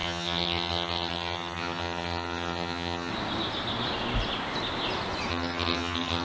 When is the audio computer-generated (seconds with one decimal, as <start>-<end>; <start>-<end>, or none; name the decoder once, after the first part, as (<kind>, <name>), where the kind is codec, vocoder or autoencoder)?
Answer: 0.0-3.1 (vocoder, HiFi-GAN); 5.3-6.2